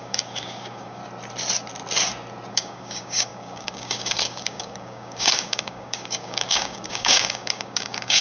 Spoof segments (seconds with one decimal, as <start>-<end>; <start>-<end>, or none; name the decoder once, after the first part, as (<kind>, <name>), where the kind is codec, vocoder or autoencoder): 0.0-1.0 (codec, DAC); 2.5-8.2